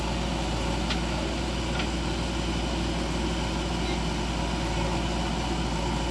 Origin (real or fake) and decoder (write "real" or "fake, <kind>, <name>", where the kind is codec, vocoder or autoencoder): real